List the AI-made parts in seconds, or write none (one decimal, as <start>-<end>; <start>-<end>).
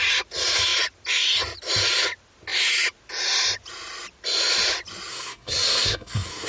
5.1-6.5